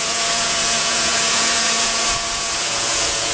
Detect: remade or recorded remade